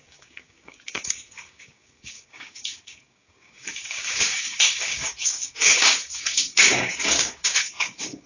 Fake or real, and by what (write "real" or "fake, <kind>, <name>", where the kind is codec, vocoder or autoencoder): fake, codec, DAC